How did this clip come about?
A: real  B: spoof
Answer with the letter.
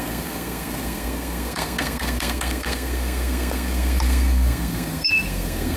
B